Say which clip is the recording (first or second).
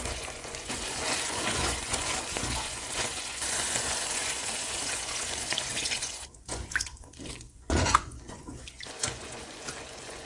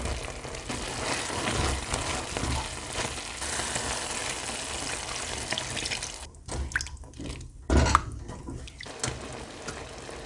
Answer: second